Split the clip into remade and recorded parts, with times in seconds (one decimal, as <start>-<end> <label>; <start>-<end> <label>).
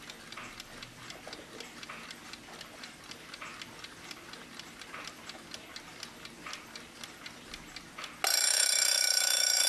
0.0-8.3 recorded; 8.3-9.7 remade